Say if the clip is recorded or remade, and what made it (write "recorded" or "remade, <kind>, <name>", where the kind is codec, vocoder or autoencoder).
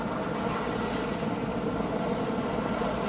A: recorded